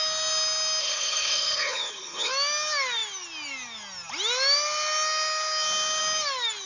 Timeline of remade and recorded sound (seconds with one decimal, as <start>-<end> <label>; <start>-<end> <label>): 0.0-0.8 recorded; 0.8-2.3 remade; 2.3-6.7 recorded